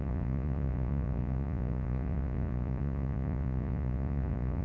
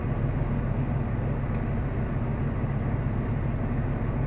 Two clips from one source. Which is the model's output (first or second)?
first